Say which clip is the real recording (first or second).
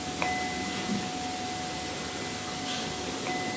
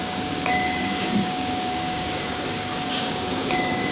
first